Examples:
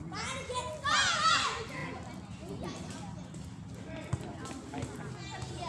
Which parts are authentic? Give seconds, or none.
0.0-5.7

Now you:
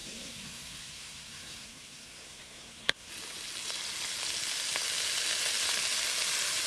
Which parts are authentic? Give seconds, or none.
3.1-6.7